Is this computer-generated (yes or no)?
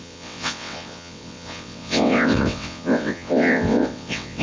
yes